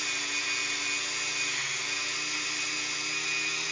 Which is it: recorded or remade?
recorded